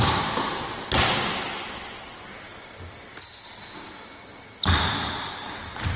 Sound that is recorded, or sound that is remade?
recorded